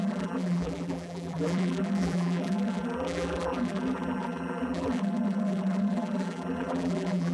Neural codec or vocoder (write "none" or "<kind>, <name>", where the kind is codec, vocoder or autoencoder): vocoder, BigVGAN v2